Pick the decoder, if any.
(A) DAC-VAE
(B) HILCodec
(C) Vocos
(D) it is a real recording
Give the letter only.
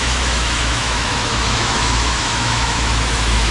A